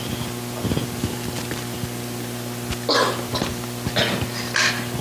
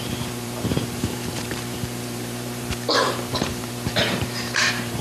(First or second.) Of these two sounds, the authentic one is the first